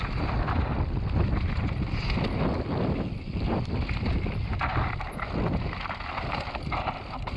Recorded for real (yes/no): yes